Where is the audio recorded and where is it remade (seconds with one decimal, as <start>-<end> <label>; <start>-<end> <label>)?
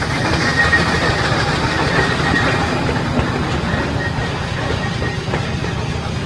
0.0-6.3 recorded